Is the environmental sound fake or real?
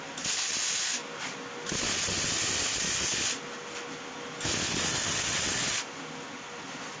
real